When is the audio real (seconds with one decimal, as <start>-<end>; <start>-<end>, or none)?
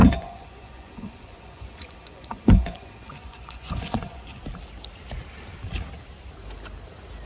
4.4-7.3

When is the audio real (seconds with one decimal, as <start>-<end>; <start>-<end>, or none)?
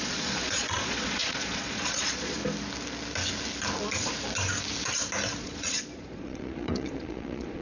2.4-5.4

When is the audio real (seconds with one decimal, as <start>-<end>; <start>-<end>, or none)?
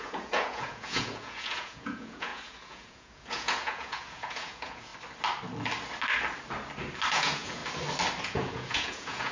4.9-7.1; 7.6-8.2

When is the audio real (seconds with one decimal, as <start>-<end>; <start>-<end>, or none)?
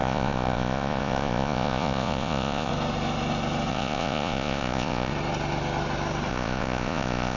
2.7-3.7; 5.1-6.3